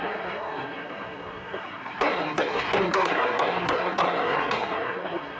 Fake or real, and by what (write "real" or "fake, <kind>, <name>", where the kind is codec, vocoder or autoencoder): fake, codec, SNAC